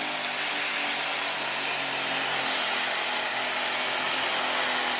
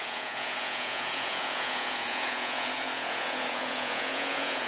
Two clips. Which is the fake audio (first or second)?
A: second